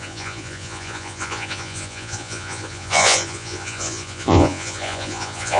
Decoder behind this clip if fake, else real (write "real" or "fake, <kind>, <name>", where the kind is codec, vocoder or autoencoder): fake, vocoder, Vocos